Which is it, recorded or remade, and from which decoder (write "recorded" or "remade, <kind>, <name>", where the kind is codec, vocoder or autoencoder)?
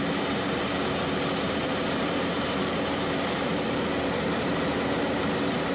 remade, vocoder, BigVGAN v2